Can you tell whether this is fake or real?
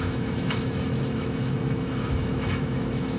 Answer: fake